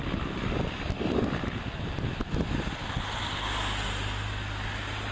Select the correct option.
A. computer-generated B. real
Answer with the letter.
B